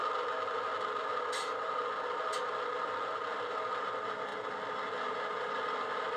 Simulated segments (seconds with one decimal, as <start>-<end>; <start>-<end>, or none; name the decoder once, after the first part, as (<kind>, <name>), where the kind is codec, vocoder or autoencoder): none